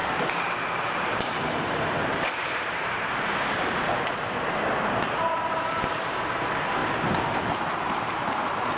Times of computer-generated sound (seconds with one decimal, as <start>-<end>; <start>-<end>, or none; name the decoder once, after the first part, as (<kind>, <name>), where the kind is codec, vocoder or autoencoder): 0.7-8.8 (vocoder, BigVGAN v2)